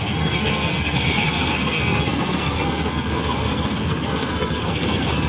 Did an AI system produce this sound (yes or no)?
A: yes